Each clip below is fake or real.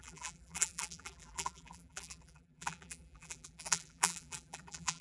fake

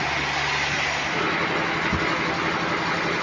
real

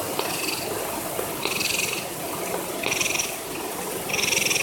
real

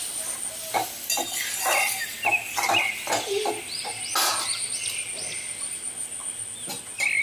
real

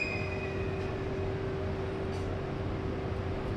real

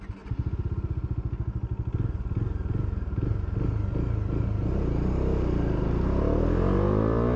real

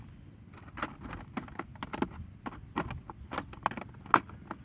real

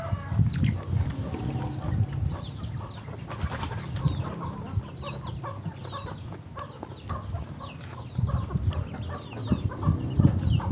real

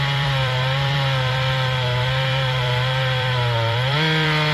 fake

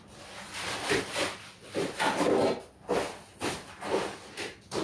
real